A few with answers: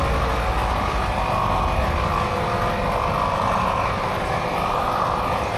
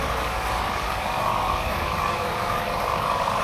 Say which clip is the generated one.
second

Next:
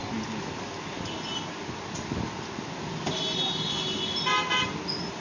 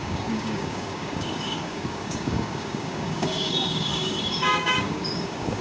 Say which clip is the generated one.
second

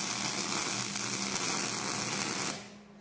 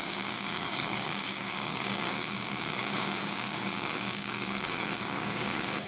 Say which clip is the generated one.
second